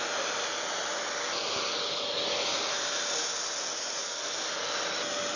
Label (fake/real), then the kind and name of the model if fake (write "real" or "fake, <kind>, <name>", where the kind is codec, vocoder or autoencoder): real